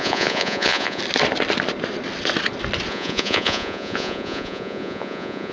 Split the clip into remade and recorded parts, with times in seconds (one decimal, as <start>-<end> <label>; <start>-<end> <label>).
0.0-1.0 remade; 1.0-2.9 recorded; 2.9-5.5 remade